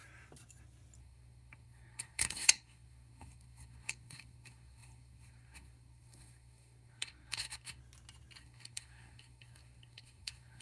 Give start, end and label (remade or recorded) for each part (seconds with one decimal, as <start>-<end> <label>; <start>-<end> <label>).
0.0-1.0 recorded; 1.0-7.8 remade; 7.8-8.4 recorded; 8.4-10.6 remade